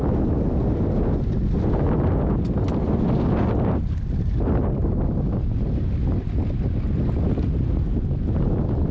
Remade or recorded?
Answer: recorded